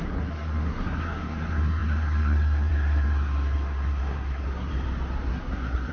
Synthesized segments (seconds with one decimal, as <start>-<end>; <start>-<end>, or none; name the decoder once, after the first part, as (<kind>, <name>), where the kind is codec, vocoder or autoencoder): 0.0-4.7 (codec, SNAC); 5.3-5.9